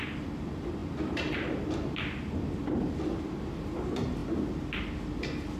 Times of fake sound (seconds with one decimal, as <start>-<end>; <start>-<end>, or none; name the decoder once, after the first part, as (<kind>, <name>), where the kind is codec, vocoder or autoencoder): none